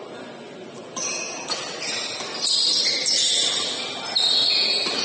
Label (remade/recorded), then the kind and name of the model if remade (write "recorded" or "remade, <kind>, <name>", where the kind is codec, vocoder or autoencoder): recorded